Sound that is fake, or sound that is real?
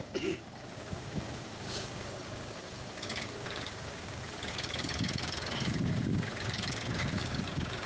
fake